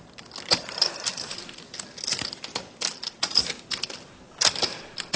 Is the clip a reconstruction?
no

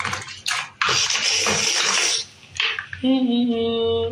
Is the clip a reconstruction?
no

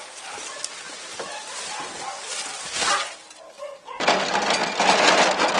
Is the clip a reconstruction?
no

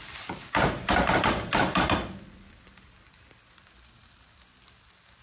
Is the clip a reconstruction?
no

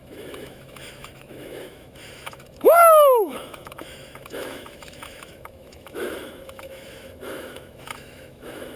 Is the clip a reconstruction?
yes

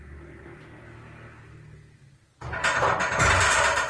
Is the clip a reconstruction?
no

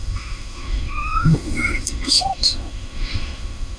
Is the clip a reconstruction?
yes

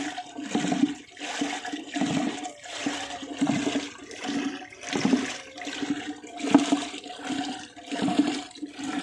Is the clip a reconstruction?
no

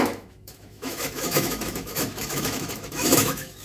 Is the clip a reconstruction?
yes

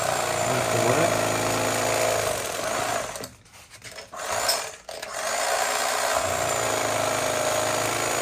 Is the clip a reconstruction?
no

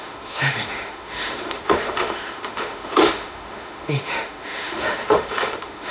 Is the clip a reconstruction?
yes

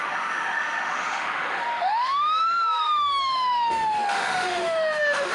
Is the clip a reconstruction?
yes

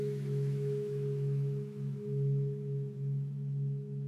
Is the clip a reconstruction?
yes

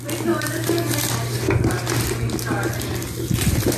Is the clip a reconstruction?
no